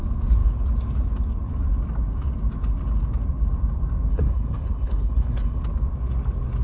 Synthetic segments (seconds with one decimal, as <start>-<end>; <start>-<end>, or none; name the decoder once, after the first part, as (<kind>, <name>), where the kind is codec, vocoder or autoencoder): 4.1-5.6 (codec, HILCodec)